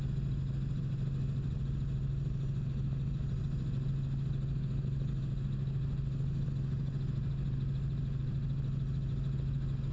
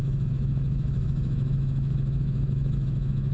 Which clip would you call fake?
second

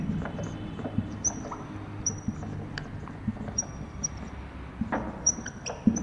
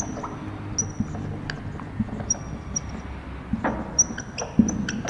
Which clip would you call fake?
first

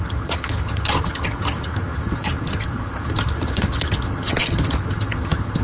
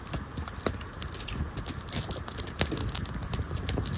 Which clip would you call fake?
first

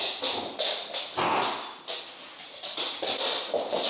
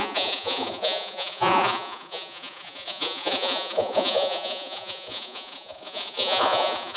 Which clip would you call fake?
second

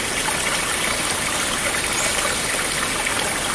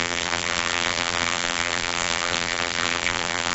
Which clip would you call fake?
second